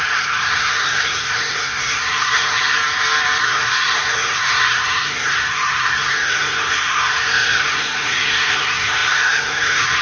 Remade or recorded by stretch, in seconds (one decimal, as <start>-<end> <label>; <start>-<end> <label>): 0.0-2.8 remade; 2.8-3.4 recorded; 3.4-10.0 remade